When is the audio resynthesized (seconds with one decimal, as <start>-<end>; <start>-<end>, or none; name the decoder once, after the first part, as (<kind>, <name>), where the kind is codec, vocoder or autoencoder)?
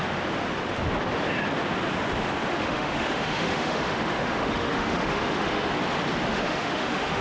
2.5-5.7 (autoencoder, DAC-VAE); 6.3-7.2